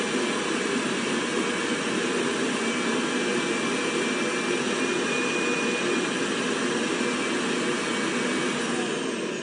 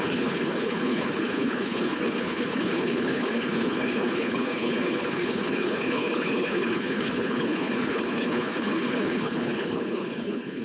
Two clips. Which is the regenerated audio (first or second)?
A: second